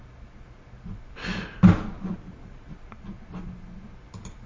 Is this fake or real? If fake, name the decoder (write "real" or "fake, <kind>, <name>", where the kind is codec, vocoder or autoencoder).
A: real